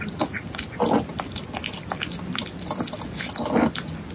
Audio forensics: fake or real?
real